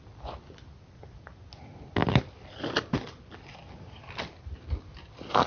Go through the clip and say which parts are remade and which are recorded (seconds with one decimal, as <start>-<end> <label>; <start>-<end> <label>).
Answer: 0.0-2.0 recorded; 2.0-4.1 remade; 4.1-5.5 recorded